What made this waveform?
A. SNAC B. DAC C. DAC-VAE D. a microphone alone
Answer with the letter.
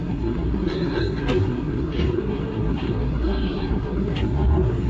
A